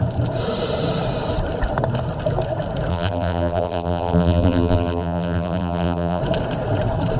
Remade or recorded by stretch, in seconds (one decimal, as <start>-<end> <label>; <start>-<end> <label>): 0.0-2.9 recorded; 2.9-6.2 remade; 6.2-7.2 recorded

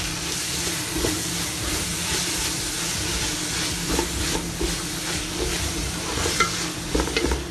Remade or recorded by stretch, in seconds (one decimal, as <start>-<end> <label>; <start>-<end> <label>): 0.0-1.9 recorded; 1.9-2.6 remade; 2.6-5.5 recorded; 5.5-6.4 remade; 6.4-7.5 recorded

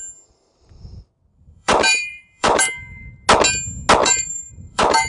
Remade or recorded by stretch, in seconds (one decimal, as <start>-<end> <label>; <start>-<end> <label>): 0.0-1.3 recorded; 1.3-2.6 remade; 2.6-4.0 recorded; 4.0-5.1 remade

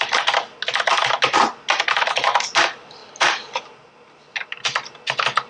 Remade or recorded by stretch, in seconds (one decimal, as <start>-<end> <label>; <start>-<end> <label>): 0.0-0.9 recorded; 0.9-1.4 remade; 1.4-3.0 recorded; 3.0-4.2 remade; 4.2-5.5 recorded

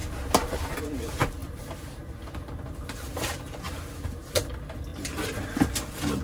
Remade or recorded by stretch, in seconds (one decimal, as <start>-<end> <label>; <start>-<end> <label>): 0.0-6.2 recorded

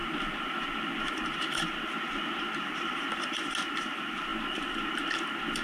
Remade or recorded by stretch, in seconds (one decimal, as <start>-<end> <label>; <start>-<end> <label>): 0.0-5.6 recorded

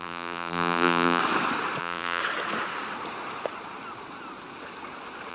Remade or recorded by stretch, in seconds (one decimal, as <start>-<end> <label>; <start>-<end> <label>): 0.0-1.2 remade; 1.2-1.8 recorded; 1.8-2.2 remade; 2.2-5.3 recorded